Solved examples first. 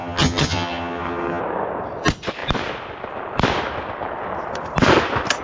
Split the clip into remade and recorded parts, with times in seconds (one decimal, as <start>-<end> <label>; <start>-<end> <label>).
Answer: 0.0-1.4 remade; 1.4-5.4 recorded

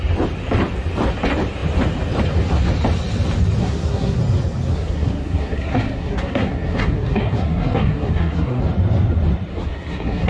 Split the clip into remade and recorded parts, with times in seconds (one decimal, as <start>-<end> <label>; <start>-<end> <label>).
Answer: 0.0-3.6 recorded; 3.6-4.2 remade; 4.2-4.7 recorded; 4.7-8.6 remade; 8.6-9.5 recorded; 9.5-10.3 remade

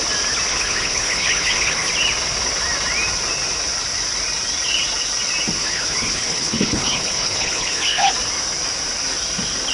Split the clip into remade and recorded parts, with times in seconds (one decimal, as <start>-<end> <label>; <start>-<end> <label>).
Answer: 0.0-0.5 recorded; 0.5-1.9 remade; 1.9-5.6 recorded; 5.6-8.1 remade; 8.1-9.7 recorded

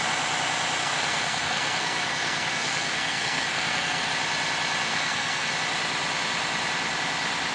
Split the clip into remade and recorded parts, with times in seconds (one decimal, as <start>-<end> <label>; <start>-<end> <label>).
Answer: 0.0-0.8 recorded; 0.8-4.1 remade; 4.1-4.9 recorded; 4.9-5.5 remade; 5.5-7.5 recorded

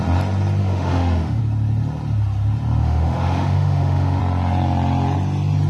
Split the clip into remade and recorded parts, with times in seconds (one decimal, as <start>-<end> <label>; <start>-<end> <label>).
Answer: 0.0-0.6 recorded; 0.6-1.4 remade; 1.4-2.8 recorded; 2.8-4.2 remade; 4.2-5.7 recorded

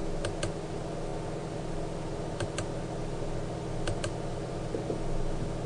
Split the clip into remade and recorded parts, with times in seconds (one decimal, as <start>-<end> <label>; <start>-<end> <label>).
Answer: 0.0-5.7 recorded